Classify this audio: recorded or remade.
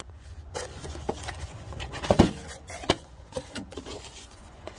remade